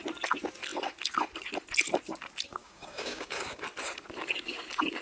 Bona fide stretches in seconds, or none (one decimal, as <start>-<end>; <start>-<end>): 0.0-2.6; 3.6-5.0